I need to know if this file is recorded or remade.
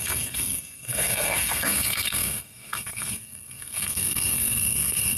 remade